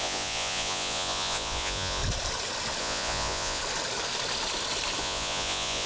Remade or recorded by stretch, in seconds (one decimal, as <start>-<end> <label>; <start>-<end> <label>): 0.0-2.0 remade; 2.0-2.8 recorded; 2.8-3.6 remade; 3.6-5.0 recorded; 5.0-5.9 remade